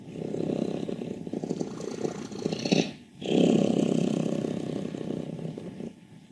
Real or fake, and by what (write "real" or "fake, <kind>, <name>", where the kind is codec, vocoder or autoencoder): real